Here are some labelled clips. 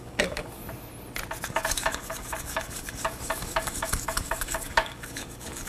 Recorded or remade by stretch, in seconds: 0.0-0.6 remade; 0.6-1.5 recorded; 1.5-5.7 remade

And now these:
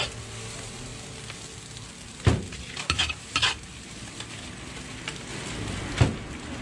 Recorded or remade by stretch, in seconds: 0.0-6.6 recorded

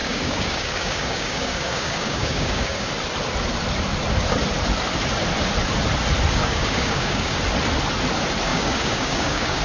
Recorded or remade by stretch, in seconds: 0.0-2.9 remade; 2.9-6.4 recorded; 6.4-7.4 remade; 7.4-8.5 recorded; 8.5-9.6 remade

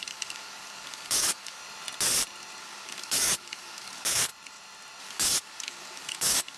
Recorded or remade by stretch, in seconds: 0.0-1.6 remade; 1.6-2.6 recorded; 2.6-4.3 remade; 4.3-5.0 recorded; 5.0-6.6 remade

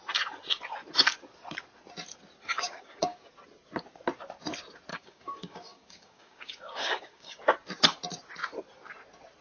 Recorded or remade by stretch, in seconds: 0.0-2.4 recorded; 2.4-3.3 remade; 3.3-4.9 recorded; 4.9-7.4 remade; 7.4-9.4 recorded

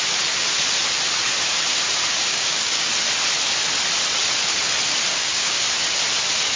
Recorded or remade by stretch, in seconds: 0.0-2.3 recorded; 2.3-2.9 remade; 2.9-5.1 recorded; 5.1-5.6 remade; 5.6-6.6 recorded